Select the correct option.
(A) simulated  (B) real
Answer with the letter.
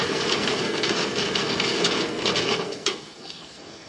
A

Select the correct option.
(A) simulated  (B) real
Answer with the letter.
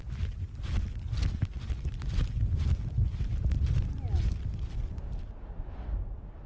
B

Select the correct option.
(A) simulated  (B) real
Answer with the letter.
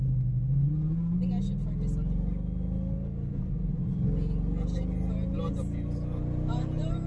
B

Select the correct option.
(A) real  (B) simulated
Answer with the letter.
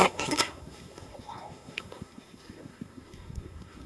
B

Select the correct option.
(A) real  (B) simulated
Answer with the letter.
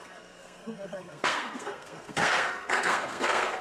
B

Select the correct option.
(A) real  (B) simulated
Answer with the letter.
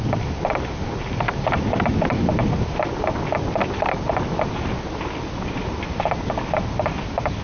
A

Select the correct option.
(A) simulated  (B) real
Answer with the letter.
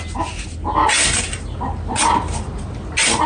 B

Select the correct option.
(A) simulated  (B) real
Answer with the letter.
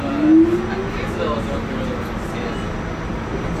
B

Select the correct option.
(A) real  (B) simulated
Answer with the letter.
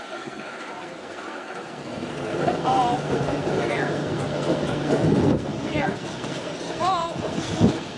B